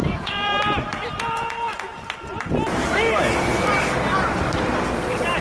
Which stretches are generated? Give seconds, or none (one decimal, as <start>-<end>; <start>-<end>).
0.0-0.5; 1.2-1.9